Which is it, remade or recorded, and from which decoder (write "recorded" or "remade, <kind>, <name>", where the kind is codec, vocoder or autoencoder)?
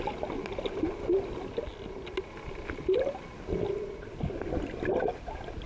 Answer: recorded